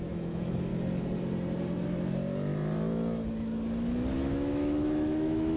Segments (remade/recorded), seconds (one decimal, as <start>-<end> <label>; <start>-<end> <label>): 0.0-0.7 remade; 0.7-4.1 recorded; 4.1-5.6 remade